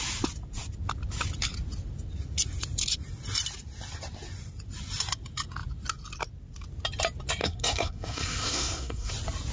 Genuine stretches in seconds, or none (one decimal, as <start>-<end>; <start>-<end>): 0.0-7.4; 9.1-9.5